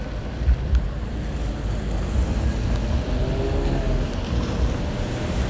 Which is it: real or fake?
real